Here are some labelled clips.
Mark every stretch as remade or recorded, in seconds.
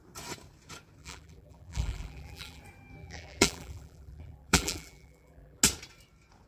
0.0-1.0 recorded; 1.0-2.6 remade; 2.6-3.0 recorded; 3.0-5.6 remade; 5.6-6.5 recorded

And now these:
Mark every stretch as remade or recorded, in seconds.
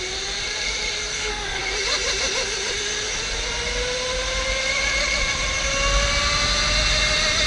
0.0-1.1 recorded; 1.1-1.6 remade; 1.6-7.5 recorded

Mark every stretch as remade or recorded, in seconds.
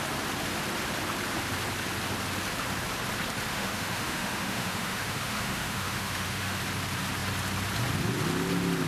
0.0-3.5 recorded; 3.5-6.6 remade; 6.6-8.9 recorded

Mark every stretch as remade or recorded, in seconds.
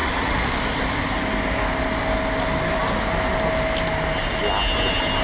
0.0-0.5 remade; 0.5-5.2 recorded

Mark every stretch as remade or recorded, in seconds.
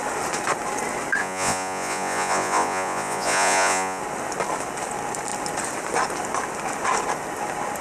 0.0-1.2 recorded; 1.2-4.0 remade; 4.0-7.8 recorded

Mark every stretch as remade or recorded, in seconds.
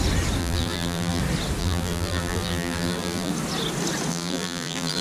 0.0-0.4 recorded; 0.4-1.2 remade; 1.2-1.6 recorded; 1.6-3.3 remade; 3.3-4.1 recorded; 4.1-5.0 remade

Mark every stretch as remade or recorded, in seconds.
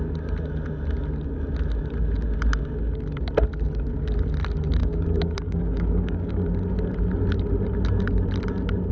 0.0-4.8 recorded; 4.8-6.5 remade; 6.5-8.9 recorded